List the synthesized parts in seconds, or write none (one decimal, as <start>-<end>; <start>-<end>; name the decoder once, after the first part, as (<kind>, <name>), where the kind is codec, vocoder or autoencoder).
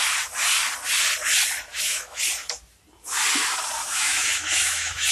1.7-2.2 (autoencoder, DAC-VAE); 3.8-5.1